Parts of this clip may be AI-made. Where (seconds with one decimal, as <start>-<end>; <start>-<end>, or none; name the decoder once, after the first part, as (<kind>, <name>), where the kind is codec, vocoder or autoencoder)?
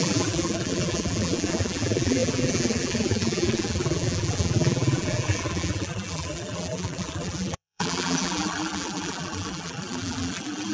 0.0-10.7 (vocoder, BigVGAN v2)